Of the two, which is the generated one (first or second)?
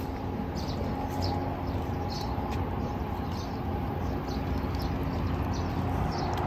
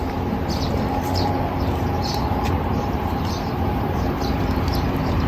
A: second